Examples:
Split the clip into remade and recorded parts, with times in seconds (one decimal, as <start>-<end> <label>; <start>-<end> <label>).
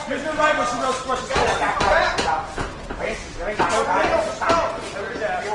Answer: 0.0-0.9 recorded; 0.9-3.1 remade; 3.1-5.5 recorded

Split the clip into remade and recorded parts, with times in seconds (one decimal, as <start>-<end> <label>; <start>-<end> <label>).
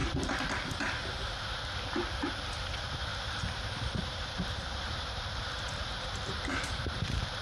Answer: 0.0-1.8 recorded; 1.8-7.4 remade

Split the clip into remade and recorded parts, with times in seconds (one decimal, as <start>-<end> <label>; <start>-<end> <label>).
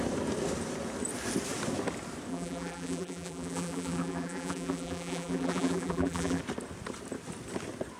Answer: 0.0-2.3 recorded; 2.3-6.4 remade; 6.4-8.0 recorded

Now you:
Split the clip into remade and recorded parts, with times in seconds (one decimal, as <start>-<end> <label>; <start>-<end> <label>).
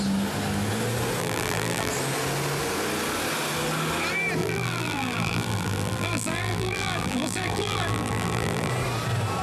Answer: 0.0-1.2 recorded; 1.2-1.9 remade; 1.9-4.4 recorded; 4.4-8.7 remade; 8.7-9.4 recorded